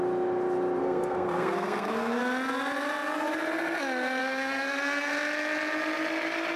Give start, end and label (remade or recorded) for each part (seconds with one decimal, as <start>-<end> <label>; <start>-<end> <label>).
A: 0.0-0.8 recorded; 0.8-2.2 remade; 2.2-4.2 recorded; 4.2-5.1 remade; 5.1-6.6 recorded